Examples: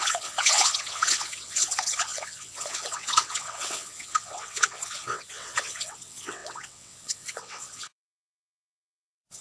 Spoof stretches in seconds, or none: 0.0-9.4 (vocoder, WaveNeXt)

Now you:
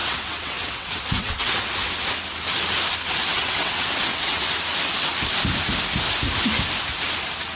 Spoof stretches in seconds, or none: 0.0-1.9 (vocoder, WaveNeXt); 3.3-4.5

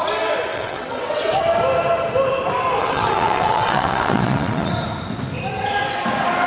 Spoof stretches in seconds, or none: 0.5-1.4 (vocoder, WaveNeXt); 2.8-4.7